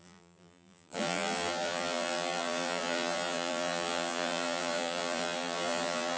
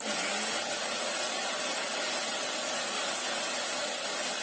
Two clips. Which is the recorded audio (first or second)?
second